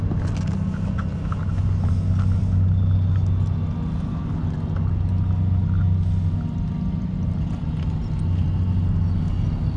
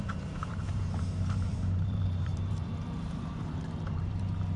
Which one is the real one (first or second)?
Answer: first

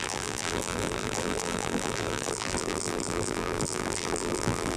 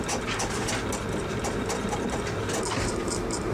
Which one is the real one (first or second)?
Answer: second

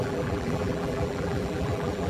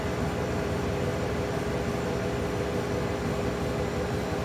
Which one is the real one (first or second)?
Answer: second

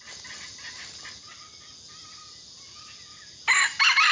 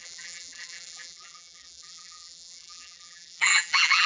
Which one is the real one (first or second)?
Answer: first